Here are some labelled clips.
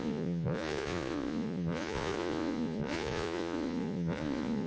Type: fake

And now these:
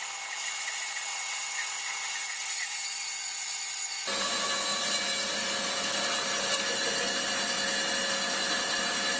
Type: real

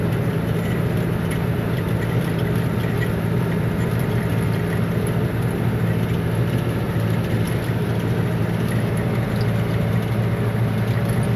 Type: real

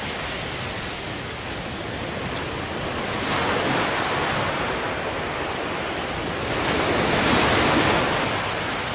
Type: real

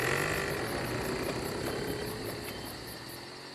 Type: real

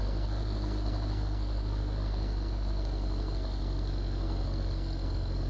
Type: fake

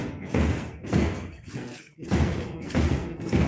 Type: fake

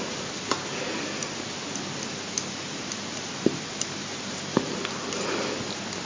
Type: real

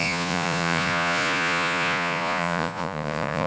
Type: fake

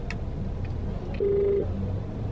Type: real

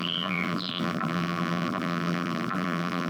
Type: fake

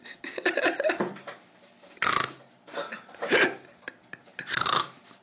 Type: real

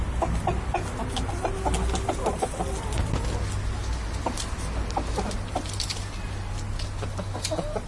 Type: real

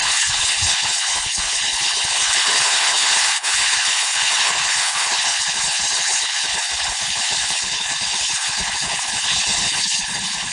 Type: fake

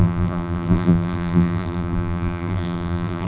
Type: fake